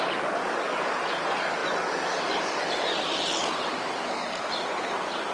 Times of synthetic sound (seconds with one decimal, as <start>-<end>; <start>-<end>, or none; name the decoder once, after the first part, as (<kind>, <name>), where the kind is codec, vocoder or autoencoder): none